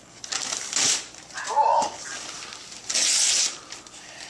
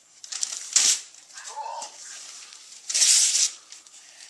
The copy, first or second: second